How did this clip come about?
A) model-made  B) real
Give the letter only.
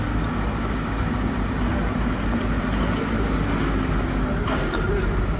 B